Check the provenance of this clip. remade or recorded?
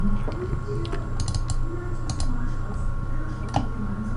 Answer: recorded